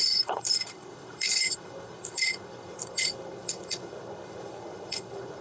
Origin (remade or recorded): remade